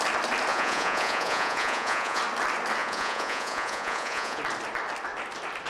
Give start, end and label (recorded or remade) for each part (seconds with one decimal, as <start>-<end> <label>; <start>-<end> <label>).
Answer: 0.0-0.5 recorded; 0.5-2.2 remade; 2.2-2.8 recorded; 2.8-4.4 remade; 4.4-5.7 recorded